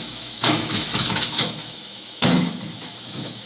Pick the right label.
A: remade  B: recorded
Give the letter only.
A